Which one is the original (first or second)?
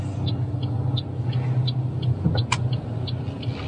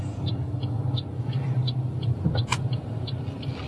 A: first